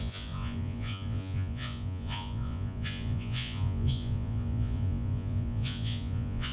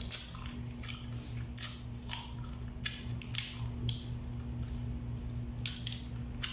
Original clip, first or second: second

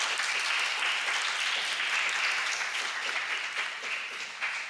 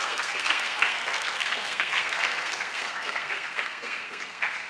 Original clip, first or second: first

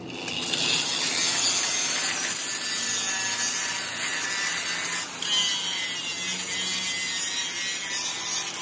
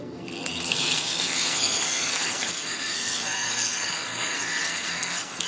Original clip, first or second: first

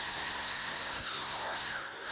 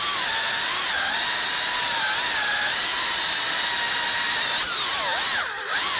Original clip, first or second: second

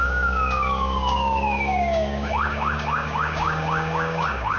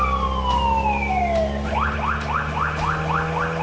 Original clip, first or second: second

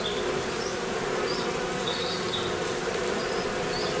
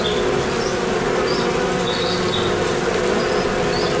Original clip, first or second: second